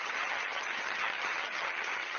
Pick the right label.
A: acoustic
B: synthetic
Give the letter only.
B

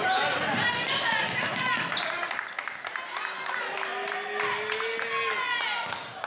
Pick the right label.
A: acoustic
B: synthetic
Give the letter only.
A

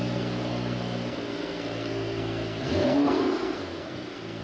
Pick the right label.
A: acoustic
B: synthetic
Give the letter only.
B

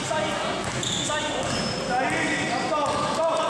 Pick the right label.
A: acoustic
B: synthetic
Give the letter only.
A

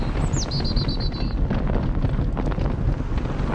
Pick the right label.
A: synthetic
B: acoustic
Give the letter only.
B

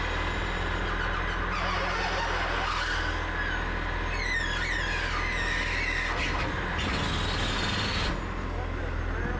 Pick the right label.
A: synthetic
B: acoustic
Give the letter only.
B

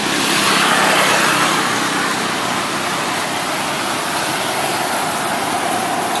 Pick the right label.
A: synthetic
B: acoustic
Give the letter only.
B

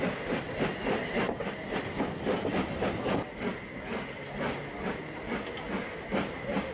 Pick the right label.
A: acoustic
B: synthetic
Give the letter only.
A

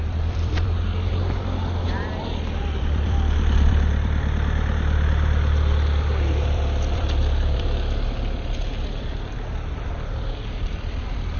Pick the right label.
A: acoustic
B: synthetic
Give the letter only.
B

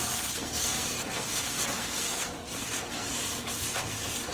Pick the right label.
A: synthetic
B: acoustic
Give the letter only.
A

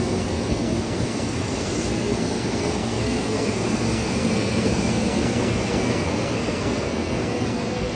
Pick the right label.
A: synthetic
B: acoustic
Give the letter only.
A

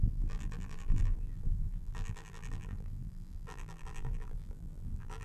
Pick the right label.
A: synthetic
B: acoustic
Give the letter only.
A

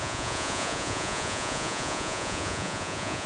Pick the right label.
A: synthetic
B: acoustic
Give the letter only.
A